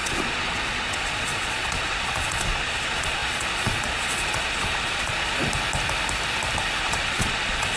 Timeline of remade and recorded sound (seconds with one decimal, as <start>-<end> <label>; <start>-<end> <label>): 0.0-5.4 remade; 5.4-6.8 recorded; 6.8-7.8 remade